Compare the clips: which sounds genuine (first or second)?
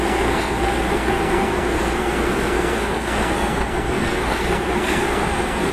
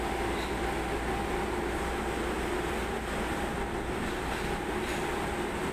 second